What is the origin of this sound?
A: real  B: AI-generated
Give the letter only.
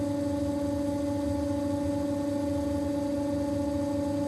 A